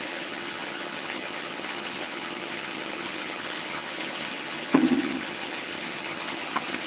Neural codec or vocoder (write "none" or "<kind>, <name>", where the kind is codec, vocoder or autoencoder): vocoder, HiFi-GAN